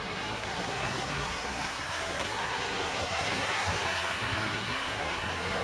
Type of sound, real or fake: fake